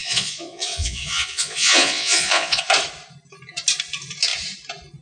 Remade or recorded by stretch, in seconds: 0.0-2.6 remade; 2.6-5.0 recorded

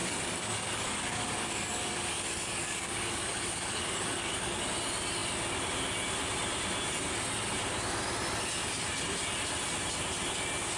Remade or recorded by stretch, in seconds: 0.0-4.6 remade; 4.6-10.8 recorded